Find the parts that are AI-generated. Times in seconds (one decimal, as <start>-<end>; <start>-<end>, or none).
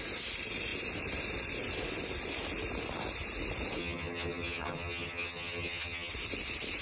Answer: 3.8-6.1